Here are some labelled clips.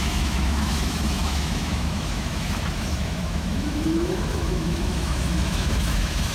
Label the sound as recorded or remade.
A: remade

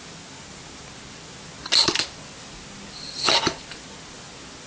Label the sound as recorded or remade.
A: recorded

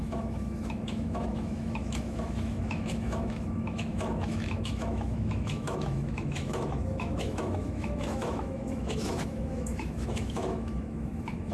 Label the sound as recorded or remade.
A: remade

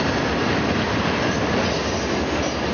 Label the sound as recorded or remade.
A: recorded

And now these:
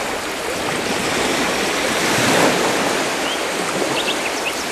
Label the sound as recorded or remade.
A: recorded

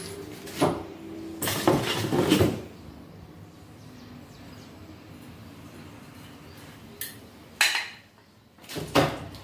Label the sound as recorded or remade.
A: recorded